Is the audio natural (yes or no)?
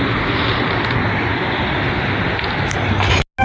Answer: yes